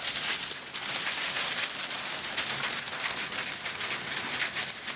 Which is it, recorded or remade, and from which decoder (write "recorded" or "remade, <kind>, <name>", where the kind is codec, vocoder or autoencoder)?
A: recorded